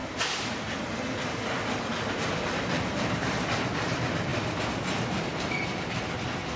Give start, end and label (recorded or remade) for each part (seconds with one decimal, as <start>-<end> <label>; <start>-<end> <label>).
0.0-6.6 recorded

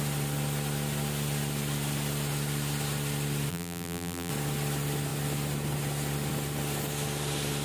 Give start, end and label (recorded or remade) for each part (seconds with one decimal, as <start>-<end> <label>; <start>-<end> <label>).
0.0-3.5 recorded; 3.5-4.3 remade; 4.3-7.6 recorded